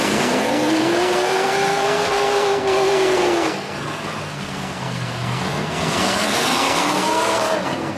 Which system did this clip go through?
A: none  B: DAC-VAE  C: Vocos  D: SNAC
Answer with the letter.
D